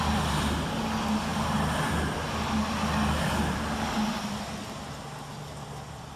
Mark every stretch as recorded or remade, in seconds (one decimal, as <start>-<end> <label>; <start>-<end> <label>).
0.0-6.2 recorded

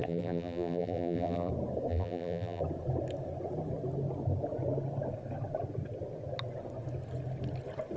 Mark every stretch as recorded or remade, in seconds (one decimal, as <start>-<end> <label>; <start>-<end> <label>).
0.0-1.5 remade; 1.5-1.9 recorded; 1.9-2.6 remade; 2.6-8.0 recorded

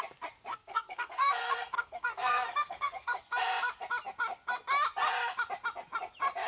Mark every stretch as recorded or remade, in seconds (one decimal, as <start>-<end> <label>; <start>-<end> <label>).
0.0-0.5 recorded; 0.5-3.2 remade; 3.2-6.5 recorded